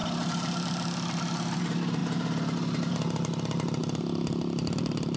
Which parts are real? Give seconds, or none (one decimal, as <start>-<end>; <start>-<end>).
0.0-5.2